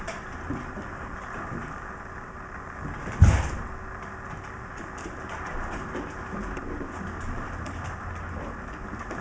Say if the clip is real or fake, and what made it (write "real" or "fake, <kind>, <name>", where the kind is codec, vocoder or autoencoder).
real